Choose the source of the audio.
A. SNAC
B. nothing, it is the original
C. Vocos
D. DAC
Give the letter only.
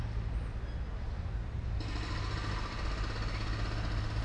B